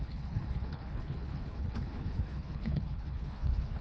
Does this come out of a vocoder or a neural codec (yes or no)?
yes